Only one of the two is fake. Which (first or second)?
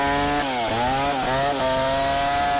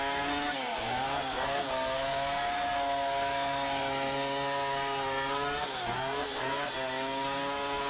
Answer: second